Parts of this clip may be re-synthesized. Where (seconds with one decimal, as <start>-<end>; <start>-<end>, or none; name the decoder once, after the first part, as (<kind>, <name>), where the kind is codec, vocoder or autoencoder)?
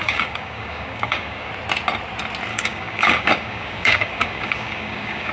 0.0-1.5 (codec, DAC); 2.5-5.3